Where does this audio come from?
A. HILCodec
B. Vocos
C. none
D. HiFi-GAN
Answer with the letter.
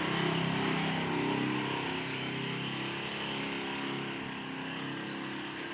C